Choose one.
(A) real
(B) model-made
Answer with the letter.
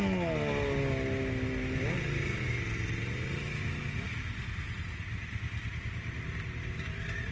A